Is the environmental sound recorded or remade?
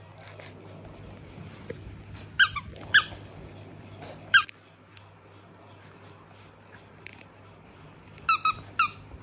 recorded